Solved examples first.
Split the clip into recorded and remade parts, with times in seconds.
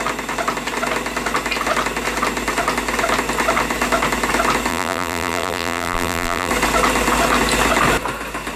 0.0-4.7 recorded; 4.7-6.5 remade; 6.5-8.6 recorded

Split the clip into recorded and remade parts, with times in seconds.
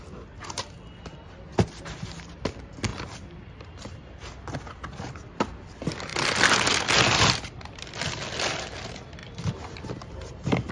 0.0-9.2 recorded; 9.2-9.9 remade; 9.9-10.7 recorded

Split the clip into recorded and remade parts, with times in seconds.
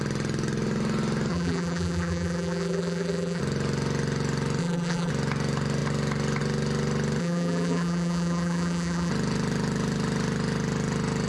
0.0-1.3 recorded; 1.3-3.4 remade; 3.4-4.6 recorded; 4.6-5.1 remade; 5.1-7.2 recorded; 7.2-9.1 remade; 9.1-11.3 recorded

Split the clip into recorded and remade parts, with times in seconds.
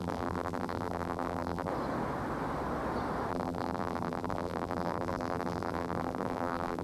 0.0-1.7 remade; 1.7-3.3 recorded; 3.3-6.8 remade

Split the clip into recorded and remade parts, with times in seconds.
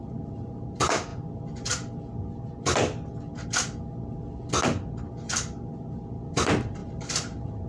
0.0-1.1 remade; 1.1-5.7 recorded; 5.7-7.7 remade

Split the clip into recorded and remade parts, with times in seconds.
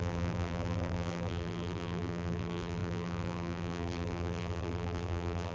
0.0-5.5 remade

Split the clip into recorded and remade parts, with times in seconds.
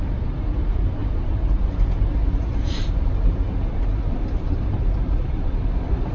0.0-6.1 remade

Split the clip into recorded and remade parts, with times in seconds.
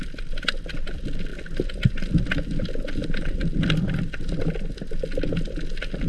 0.0-3.0 recorded; 3.0-4.4 remade; 4.4-6.1 recorded